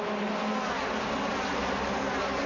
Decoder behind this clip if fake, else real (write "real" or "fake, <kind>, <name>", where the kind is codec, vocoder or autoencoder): real